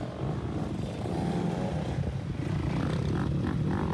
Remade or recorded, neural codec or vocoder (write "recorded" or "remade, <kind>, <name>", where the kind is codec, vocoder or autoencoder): recorded